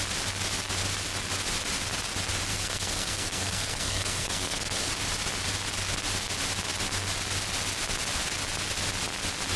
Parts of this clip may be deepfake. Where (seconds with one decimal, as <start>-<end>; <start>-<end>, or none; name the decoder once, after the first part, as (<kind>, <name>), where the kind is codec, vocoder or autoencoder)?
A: 2.5-4.9 (codec, SNAC)